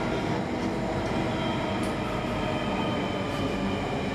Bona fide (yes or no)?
yes